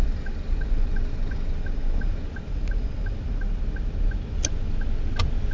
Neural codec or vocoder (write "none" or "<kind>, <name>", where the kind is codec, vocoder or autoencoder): none